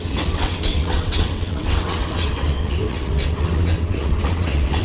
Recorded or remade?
remade